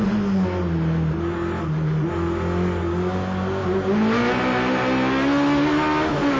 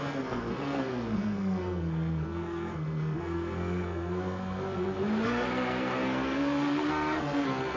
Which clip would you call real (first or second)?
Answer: first